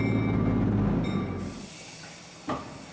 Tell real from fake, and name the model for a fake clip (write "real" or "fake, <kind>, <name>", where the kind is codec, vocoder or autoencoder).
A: real